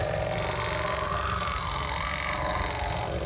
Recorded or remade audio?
recorded